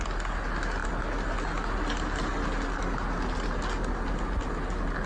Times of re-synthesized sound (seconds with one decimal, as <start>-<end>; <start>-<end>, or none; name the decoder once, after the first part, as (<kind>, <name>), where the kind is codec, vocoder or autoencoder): none